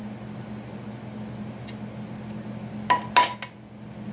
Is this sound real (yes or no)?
yes